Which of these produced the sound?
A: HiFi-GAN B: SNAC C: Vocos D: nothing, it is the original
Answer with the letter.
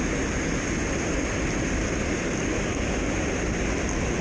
D